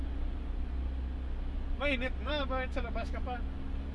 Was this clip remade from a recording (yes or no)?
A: no